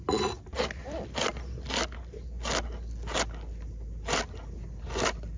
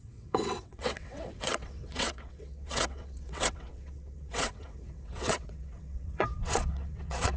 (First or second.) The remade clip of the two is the second